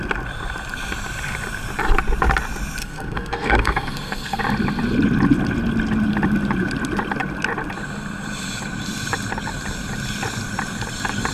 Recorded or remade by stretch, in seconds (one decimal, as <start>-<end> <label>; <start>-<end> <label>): 0.0-2.8 recorded; 2.8-4.4 remade; 4.4-11.3 recorded